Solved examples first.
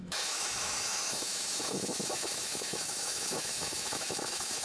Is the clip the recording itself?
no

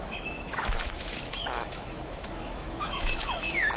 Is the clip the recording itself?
no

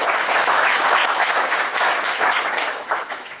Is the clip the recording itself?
no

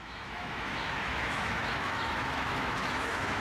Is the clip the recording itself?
no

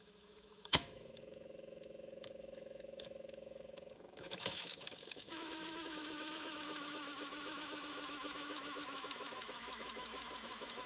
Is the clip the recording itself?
no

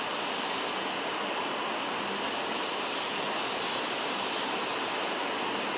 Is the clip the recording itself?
yes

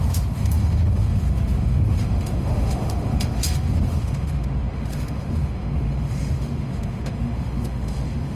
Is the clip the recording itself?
no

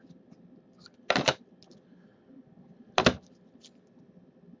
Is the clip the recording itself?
yes